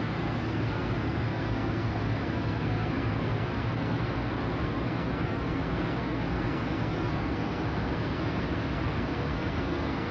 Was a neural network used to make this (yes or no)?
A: yes